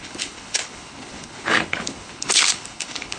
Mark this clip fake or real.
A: fake